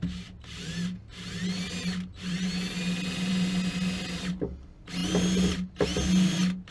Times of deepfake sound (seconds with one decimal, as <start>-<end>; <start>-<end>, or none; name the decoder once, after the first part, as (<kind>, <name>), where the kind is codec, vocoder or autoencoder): none